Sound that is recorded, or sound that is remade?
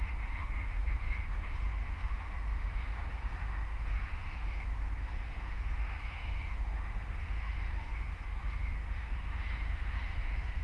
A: remade